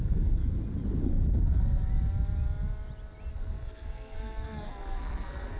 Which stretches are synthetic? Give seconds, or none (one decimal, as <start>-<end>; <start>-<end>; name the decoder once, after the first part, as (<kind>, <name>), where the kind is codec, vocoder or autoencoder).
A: 0.0-0.4 (codec, SNAC); 1.0-1.8; 3.3-5.6